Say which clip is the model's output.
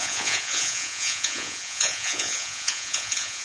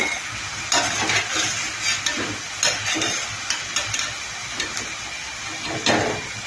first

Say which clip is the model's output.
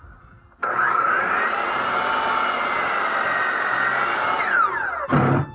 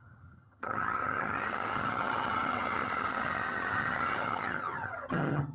second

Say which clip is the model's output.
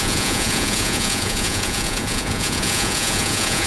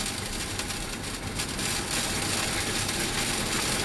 first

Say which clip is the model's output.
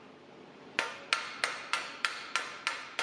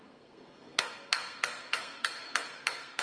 second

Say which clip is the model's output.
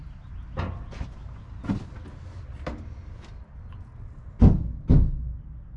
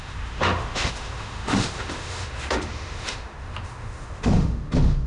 second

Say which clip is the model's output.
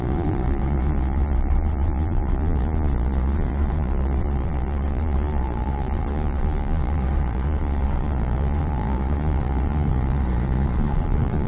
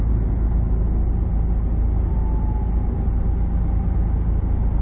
first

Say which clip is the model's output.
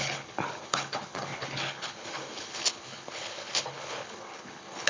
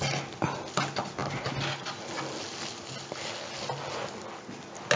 first